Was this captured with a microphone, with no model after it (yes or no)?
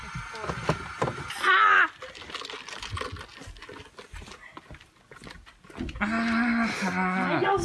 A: yes